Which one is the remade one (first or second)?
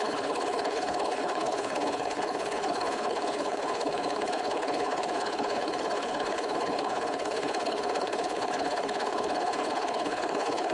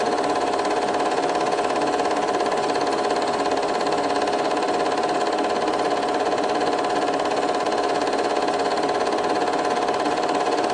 first